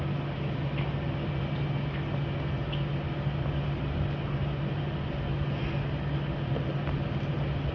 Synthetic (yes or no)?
no